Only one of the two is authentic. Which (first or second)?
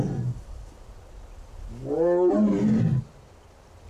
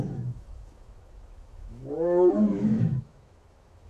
first